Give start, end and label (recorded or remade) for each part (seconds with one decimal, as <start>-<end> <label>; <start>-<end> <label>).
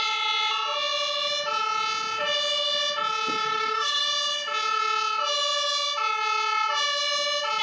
0.0-3.4 recorded; 3.4-4.0 remade; 4.0-7.6 recorded